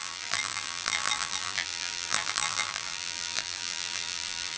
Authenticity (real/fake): fake